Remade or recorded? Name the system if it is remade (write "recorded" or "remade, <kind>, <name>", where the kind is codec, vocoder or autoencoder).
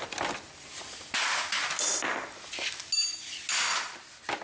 recorded